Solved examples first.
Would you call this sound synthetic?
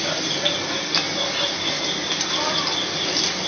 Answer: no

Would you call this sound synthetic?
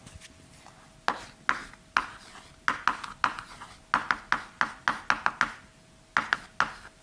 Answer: no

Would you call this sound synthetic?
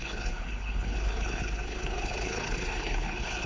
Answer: yes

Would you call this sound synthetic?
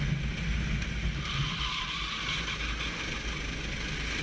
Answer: no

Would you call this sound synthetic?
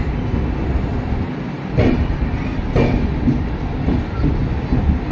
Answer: no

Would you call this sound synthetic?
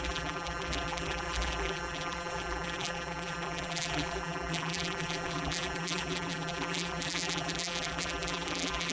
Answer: yes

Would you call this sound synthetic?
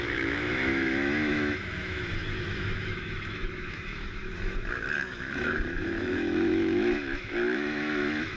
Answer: yes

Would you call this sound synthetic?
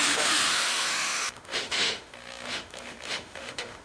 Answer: yes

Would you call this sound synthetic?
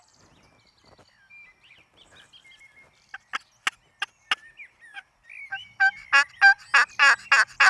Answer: no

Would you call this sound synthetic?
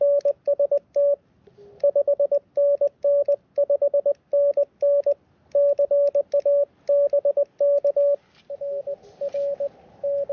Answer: no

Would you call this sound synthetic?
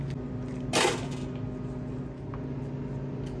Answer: no